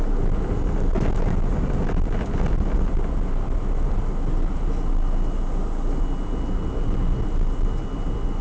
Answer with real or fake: real